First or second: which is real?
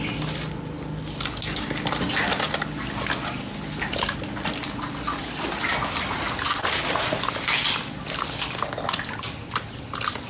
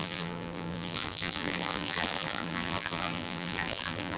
first